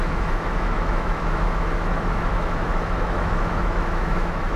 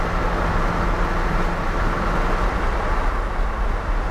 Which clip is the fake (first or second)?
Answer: first